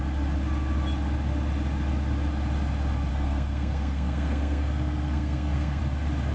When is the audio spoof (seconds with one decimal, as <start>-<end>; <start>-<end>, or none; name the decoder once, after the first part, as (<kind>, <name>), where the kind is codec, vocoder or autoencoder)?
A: 3.1-5.8 (codec, SNAC)